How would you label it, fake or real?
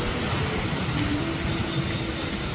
real